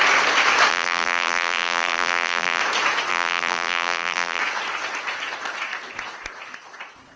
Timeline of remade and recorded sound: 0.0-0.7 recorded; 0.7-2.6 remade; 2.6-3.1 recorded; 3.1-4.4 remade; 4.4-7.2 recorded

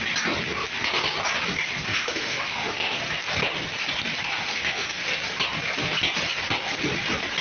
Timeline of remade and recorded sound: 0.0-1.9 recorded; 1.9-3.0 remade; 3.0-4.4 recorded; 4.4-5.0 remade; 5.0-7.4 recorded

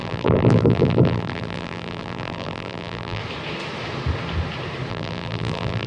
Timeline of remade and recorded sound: 0.0-3.2 remade; 3.2-4.9 recorded; 4.9-5.9 remade

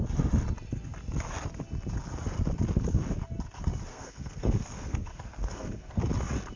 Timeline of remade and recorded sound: 0.0-3.9 recorded; 3.9-6.0 remade; 6.0-6.6 recorded

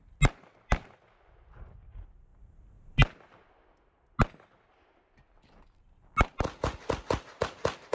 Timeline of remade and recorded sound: 0.0-7.9 recorded